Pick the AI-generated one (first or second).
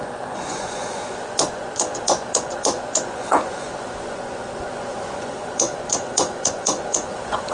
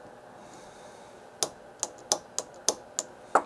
first